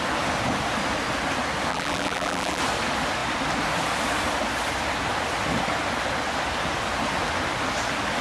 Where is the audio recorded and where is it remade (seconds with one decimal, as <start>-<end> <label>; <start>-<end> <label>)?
0.0-1.7 recorded; 1.7-2.6 remade; 2.6-8.2 recorded